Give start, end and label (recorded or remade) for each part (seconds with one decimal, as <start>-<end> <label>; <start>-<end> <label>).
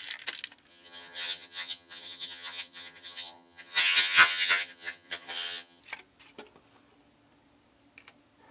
0.0-0.7 recorded; 0.7-5.8 remade; 5.8-8.5 recorded